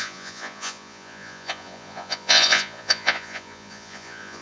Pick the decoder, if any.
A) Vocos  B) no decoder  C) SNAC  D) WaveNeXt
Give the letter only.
A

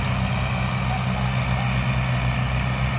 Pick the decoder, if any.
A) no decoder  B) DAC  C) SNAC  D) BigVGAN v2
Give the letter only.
A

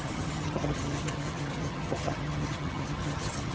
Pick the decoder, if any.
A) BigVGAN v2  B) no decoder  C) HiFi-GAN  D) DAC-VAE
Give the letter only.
C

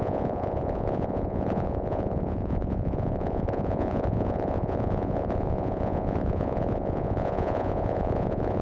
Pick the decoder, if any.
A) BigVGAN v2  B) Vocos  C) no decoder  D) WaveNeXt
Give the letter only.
B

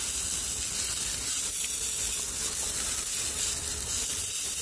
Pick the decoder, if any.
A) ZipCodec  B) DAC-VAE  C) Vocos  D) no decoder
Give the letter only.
D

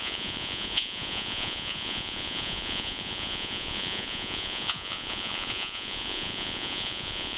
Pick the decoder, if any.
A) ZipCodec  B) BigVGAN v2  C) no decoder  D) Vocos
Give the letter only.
D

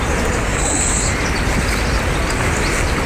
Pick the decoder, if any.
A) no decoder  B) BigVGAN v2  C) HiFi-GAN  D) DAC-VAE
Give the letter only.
A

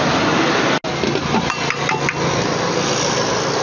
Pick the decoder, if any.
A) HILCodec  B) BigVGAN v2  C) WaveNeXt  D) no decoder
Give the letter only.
D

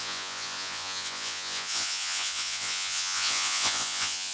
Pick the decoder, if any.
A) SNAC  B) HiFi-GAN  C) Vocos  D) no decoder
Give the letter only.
C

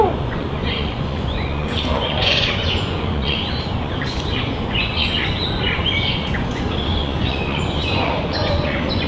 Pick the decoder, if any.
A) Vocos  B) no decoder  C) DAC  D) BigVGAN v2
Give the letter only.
A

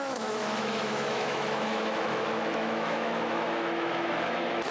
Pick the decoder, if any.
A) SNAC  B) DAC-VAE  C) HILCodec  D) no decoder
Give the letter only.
B